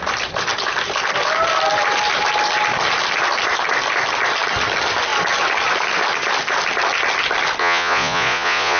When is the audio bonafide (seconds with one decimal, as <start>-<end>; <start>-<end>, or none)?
0.0-7.6